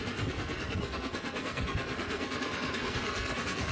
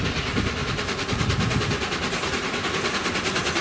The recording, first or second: second